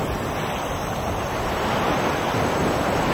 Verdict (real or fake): real